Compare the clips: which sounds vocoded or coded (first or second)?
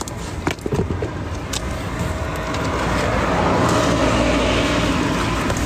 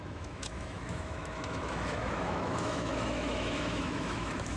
second